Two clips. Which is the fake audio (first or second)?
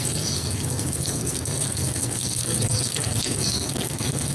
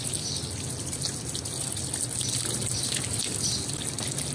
first